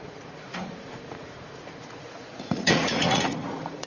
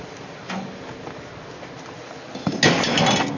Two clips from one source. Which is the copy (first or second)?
first